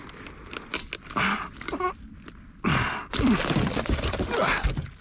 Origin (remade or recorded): recorded